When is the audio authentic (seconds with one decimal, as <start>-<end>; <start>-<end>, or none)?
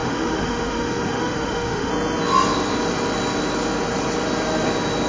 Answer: 1.9-5.1